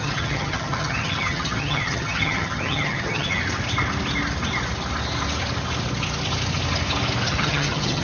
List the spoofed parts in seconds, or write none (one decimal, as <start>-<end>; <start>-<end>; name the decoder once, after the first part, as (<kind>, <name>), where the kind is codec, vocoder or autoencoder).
0.0-3.4 (vocoder, HiFi-GAN); 7.3-8.0